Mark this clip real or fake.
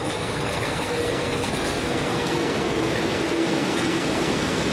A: fake